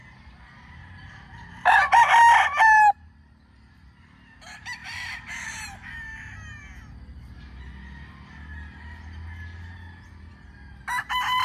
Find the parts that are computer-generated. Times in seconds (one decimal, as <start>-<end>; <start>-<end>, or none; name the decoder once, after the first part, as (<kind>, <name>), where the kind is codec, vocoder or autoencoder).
4.8-6.6 (vocoder, BigVGAN v2)